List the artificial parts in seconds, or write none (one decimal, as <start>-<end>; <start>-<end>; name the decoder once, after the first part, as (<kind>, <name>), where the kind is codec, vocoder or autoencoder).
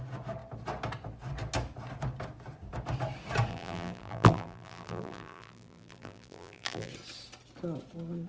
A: 3.5-6.9 (vocoder, BigVGAN v2)